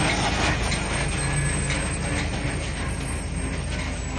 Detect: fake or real real